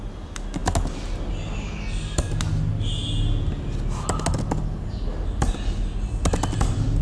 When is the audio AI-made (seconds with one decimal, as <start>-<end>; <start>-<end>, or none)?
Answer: none